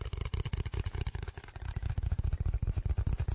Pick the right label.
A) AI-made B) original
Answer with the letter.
B